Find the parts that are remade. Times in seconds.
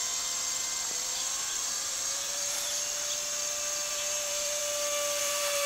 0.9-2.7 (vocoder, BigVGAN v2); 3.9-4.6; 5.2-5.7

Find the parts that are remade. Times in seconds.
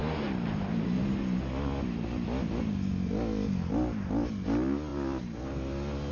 none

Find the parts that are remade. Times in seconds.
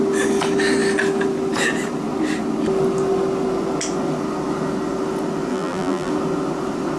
5.5-6.1 (vocoder, BigVGAN v2)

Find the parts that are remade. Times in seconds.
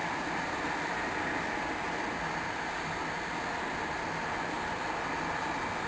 0.0-0.7 (vocoder, BigVGAN v2)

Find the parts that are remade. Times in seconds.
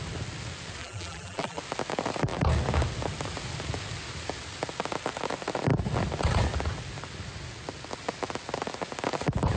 0.8-1.6 (vocoder, BigVGAN v2)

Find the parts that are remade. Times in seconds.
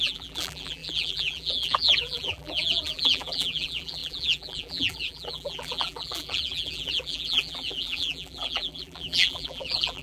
0.0-10.0 (vocoder, BigVGAN v2)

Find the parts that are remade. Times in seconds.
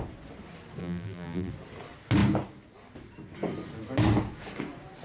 0.8-1.5 (vocoder, BigVGAN v2)